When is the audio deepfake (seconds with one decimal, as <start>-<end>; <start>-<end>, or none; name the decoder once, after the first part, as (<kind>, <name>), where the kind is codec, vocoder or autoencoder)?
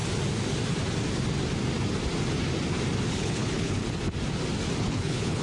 3.1-3.8 (codec, HILCodec); 4.8-5.4